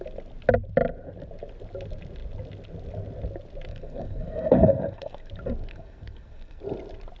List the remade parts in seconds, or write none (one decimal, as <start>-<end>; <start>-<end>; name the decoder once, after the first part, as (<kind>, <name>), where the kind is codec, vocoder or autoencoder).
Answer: 3.7-5.3 (codec, SNAC); 5.7-6.6